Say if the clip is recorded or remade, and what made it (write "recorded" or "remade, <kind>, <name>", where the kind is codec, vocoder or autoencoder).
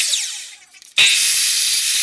recorded